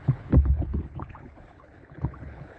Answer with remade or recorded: remade